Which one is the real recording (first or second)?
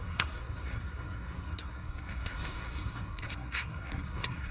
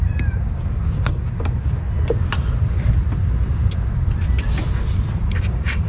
second